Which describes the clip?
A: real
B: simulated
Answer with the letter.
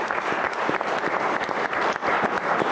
A